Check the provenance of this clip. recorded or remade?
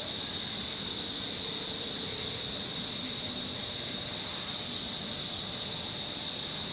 recorded